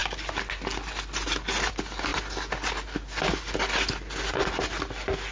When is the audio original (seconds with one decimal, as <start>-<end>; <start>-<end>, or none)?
0.0-5.3